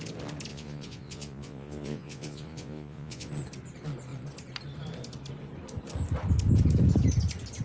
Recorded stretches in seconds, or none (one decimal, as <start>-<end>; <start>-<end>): 0.0-0.5; 3.3-7.6